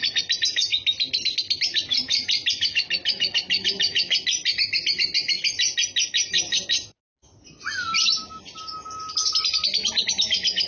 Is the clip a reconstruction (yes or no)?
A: no